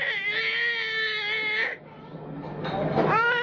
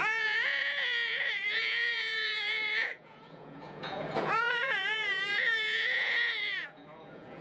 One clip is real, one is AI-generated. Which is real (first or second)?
first